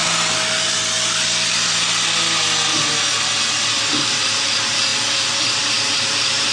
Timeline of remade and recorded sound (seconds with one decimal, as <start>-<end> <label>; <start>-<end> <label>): 0.0-3.9 recorded; 3.9-4.9 remade; 4.9-5.9 recorded; 5.9-6.5 remade